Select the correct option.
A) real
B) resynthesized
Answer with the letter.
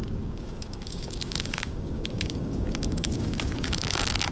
B